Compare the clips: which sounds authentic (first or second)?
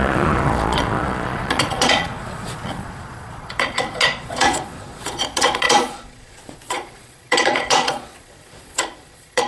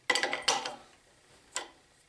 second